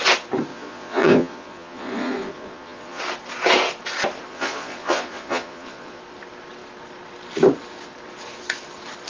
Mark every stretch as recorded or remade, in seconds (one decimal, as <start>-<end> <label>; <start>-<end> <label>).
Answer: 0.0-0.5 recorded; 0.5-3.0 remade; 3.0-4.3 recorded; 4.3-6.0 remade; 6.0-9.1 recorded